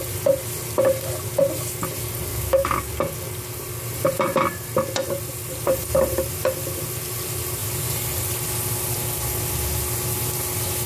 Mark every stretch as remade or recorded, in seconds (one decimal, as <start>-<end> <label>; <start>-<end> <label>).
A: 0.0-2.3 recorded; 2.3-2.9 remade; 2.9-10.9 recorded